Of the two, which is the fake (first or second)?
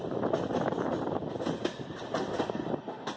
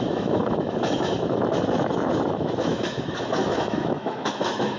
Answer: second